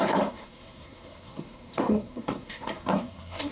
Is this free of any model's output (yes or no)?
no